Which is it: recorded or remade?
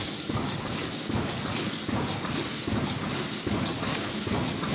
remade